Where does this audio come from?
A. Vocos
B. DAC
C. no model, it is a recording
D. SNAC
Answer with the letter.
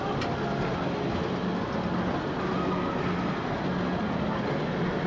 C